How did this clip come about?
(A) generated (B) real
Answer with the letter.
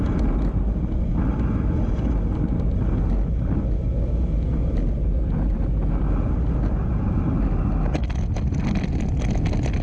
B